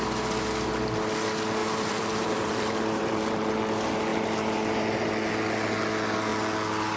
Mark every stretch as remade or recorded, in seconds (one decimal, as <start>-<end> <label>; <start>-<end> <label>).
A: 0.0-1.6 recorded; 1.6-3.5 remade; 3.5-4.1 recorded; 4.1-5.1 remade; 5.1-7.0 recorded

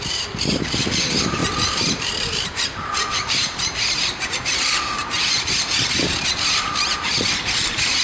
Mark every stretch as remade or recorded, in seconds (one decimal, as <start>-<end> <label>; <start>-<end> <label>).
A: 0.0-8.0 remade

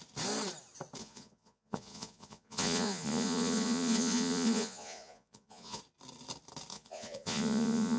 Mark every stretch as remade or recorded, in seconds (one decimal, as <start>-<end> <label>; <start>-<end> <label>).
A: 0.0-1.0 recorded; 1.0-5.8 remade; 5.8-6.7 recorded; 6.7-8.0 remade

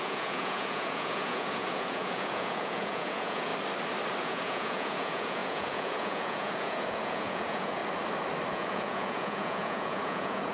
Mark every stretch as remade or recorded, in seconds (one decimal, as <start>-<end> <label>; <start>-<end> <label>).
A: 0.0-3.5 remade; 3.5-4.2 recorded; 4.2-7.8 remade; 7.8-8.5 recorded; 8.5-10.5 remade

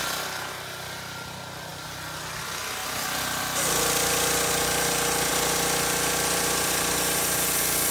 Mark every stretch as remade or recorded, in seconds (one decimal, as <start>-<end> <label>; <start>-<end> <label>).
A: 0.0-7.9 recorded

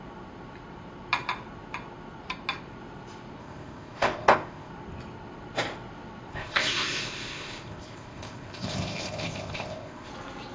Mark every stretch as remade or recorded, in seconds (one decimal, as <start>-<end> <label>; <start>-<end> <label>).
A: 0.0-3.4 recorded; 3.4-4.7 remade; 4.7-6.3 recorded; 6.3-10.1 remade; 10.1-10.5 recorded

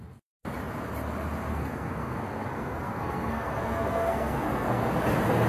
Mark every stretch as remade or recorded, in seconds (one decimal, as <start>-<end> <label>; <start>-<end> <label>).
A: 0.0-1.5 recorded; 1.5-4.8 remade; 4.8-5.5 recorded